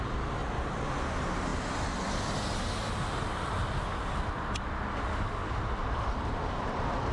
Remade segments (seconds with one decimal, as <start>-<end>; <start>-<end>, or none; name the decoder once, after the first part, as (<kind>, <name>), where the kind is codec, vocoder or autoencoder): 0.4-1.1 (vocoder, BigVGAN v2); 5.8-7.1